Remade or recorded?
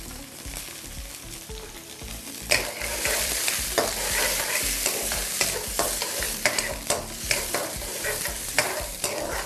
remade